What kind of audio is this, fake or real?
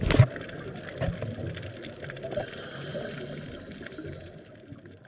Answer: real